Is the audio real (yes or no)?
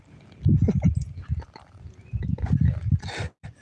no